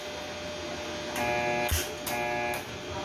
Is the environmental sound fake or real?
real